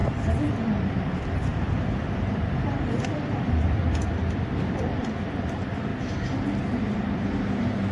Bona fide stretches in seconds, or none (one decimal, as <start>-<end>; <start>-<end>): 5.9-6.6